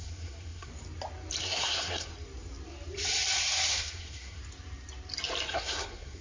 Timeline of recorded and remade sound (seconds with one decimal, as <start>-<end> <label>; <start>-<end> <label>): 0.0-0.7 remade; 0.7-1.4 recorded; 1.4-2.1 remade; 2.1-3.7 recorded; 3.7-4.4 remade; 4.4-5.5 recorded; 5.5-6.2 remade